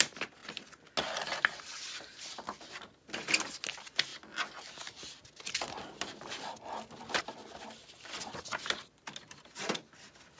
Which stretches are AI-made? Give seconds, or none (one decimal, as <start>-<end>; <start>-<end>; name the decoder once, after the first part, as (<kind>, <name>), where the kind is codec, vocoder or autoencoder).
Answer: none